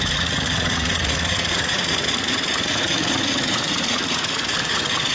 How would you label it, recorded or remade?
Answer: remade